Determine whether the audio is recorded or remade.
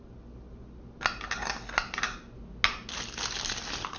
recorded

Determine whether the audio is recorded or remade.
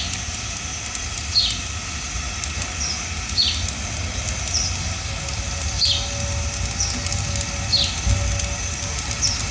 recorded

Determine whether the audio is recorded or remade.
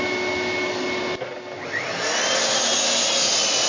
recorded